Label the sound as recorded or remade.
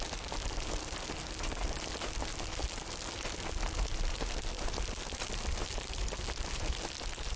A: recorded